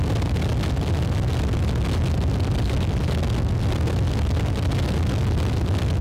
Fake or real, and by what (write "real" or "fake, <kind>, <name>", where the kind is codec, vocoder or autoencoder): real